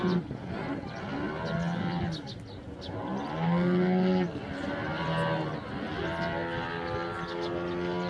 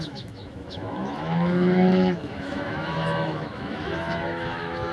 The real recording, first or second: first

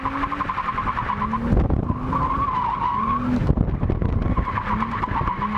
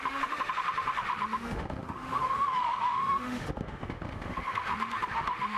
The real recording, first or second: first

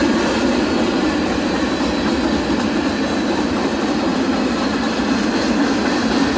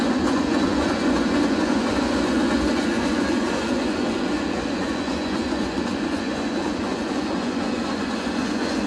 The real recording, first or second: first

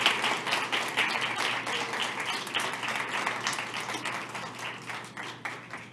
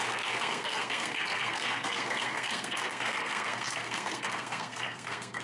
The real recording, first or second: first